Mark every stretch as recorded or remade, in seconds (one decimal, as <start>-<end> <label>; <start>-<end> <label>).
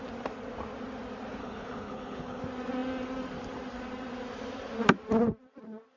0.0-1.4 recorded; 1.4-2.4 remade; 2.4-6.0 recorded